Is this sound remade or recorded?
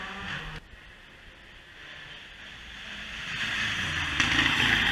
recorded